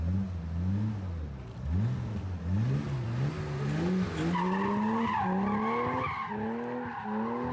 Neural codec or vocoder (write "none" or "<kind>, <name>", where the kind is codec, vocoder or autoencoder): none